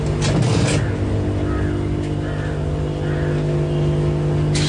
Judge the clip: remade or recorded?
recorded